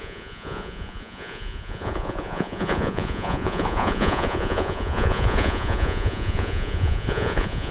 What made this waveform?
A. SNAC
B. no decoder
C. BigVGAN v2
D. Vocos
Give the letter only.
D